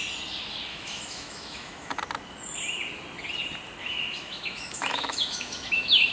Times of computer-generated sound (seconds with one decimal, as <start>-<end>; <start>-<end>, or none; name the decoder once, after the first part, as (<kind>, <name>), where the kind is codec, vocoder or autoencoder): 0.7-2.0 (autoencoder, DAC-VAE); 3.8-6.1